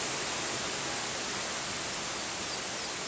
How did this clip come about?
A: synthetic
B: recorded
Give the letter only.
B